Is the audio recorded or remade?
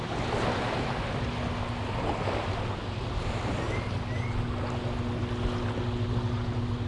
recorded